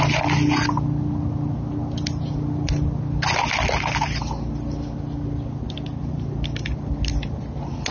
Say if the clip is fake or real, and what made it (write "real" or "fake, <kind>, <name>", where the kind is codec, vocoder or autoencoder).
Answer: real